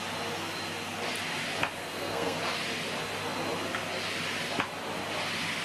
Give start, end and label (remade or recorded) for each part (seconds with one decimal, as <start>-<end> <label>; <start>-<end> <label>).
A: 0.0-1.8 recorded; 1.8-2.4 remade; 2.4-5.6 recorded